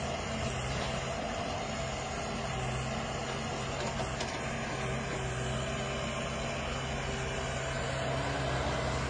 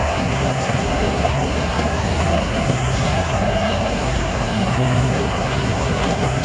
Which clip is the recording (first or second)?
first